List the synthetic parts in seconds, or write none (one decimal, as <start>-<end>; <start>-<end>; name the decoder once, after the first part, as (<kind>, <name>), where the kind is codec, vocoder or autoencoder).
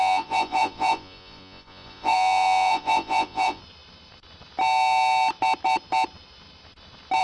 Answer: 0.0-3.6 (vocoder, Vocos)